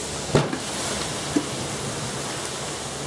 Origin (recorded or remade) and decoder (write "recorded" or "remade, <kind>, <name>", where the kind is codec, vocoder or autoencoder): recorded